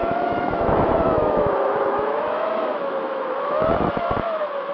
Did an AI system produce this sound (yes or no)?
yes